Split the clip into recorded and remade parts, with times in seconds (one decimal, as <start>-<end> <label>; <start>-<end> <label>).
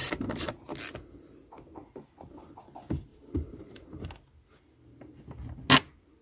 0.0-0.6 remade; 0.6-1.8 recorded; 1.8-2.6 remade; 2.6-3.1 recorded; 3.1-4.1 remade; 4.1-6.2 recorded